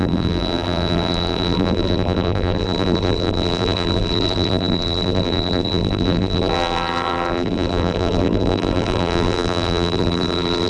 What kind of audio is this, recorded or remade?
remade